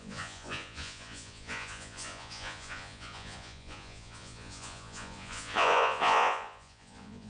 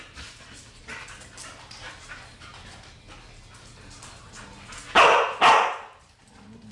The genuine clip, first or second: second